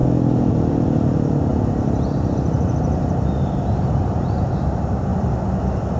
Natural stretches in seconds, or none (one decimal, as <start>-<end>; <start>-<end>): 1.5-4.0; 5.1-6.0